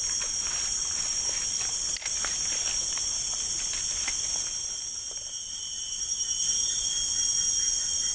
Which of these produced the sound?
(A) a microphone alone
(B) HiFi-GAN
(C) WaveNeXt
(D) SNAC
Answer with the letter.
A